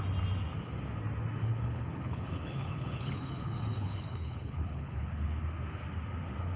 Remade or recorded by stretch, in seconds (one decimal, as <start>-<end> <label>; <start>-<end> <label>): 0.0-1.4 recorded; 1.4-5.4 remade; 5.4-6.6 recorded